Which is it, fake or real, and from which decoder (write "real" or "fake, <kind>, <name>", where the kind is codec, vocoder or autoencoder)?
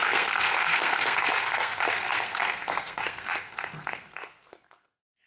fake, codec, SNAC